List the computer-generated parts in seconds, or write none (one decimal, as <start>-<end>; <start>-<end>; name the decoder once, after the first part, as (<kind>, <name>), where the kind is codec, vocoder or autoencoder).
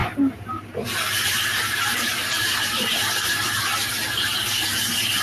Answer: 0.0-3.1 (vocoder, BigVGAN v2)